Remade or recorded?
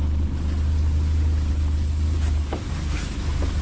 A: recorded